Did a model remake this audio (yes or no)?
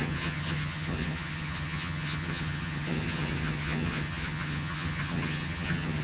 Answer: yes